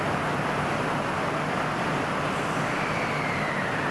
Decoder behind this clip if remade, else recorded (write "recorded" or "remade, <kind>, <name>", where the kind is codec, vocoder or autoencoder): recorded